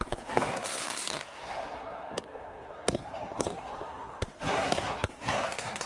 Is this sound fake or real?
fake